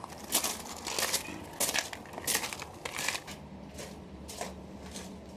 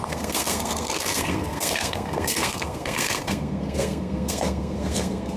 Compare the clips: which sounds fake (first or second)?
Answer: second